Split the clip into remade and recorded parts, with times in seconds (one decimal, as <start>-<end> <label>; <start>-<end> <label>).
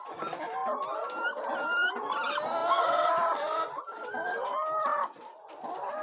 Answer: 0.0-6.0 recorded